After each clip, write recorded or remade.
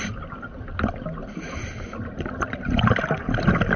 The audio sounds recorded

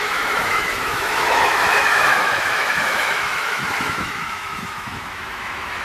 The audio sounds remade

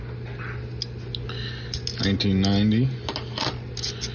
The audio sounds recorded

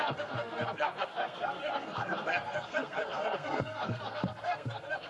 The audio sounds remade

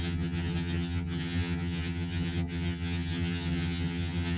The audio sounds remade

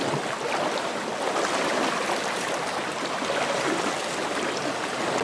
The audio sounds recorded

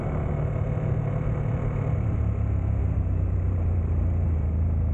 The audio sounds remade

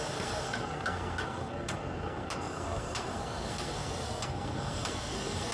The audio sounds remade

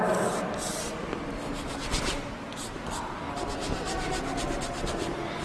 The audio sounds recorded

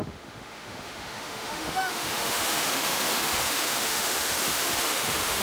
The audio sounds remade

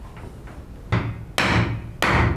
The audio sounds recorded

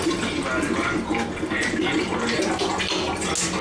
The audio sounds recorded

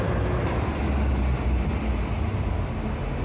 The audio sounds recorded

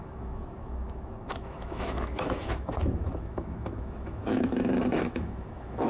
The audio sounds remade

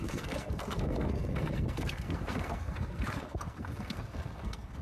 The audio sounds remade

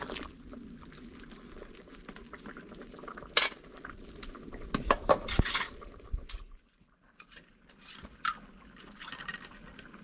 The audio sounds recorded